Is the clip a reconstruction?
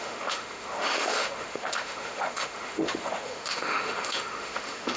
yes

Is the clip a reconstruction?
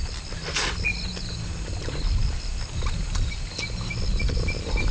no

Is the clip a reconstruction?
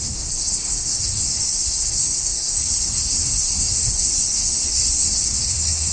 yes